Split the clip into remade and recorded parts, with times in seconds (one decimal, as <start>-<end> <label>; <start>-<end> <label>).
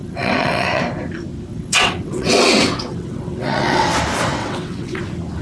0.0-0.8 remade; 0.8-1.5 recorded; 1.5-3.9 remade; 3.9-4.4 recorded; 4.4-5.0 remade; 5.0-5.4 recorded